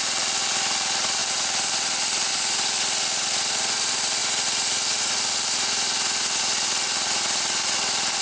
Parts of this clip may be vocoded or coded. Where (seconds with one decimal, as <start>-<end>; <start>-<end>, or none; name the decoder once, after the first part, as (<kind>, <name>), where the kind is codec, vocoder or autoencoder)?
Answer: none